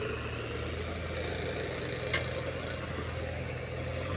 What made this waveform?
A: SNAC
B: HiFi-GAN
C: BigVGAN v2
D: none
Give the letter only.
D